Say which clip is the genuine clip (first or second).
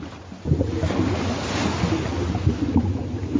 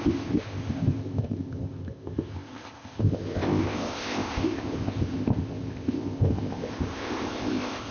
first